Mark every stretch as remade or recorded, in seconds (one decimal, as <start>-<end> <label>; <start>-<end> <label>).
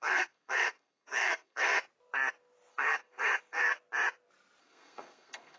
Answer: 0.0-1.7 remade; 1.7-2.7 recorded; 2.7-3.7 remade; 3.7-4.6 recorded; 4.6-5.6 remade